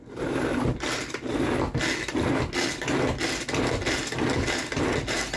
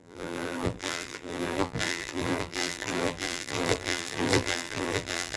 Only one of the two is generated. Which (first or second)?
second